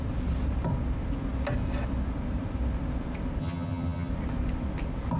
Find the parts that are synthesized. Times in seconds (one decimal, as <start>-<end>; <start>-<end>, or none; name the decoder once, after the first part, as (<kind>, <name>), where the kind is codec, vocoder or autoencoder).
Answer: 3.4-4.1 (vocoder, HiFi-GAN)